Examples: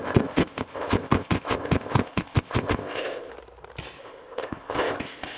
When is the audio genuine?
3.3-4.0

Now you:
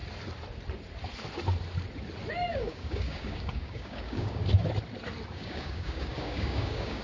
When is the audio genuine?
0.0-2.3; 4.4-5.3

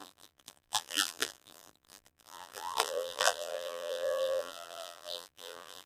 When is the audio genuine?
none

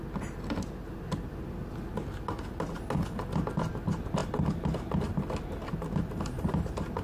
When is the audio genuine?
0.0-7.0

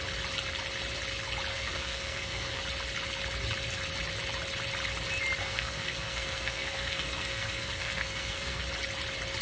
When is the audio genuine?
0.0-1.5; 2.6-5.4; 8.6-9.4

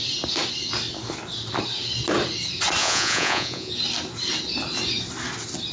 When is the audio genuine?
0.0-2.8; 3.7-5.7

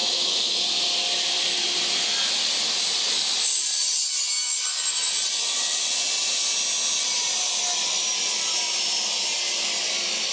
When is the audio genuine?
0.6-10.3

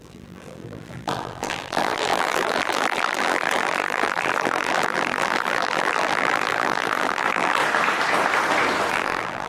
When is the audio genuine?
7.6-8.9